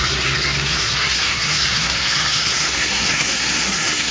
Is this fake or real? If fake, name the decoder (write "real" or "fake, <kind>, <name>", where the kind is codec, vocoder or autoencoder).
fake, codec, SNAC